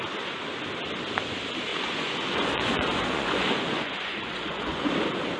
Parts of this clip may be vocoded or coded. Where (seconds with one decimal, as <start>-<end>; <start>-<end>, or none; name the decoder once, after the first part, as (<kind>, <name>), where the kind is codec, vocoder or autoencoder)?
1.7-4.9 (vocoder, Vocos)